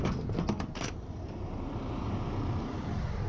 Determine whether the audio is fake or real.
real